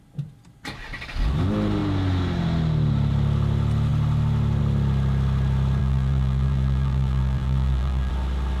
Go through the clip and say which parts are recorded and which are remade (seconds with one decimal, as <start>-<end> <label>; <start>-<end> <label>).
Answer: 0.0-5.8 recorded; 5.8-8.1 remade; 8.1-8.6 recorded